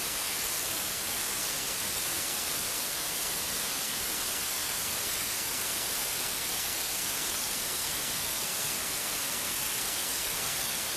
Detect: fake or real fake